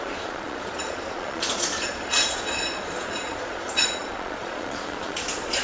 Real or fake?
fake